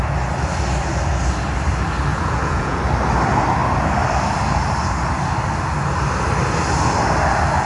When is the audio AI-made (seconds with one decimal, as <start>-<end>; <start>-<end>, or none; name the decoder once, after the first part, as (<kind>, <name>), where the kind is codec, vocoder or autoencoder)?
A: 2.1-2.8 (vocoder, Vocos)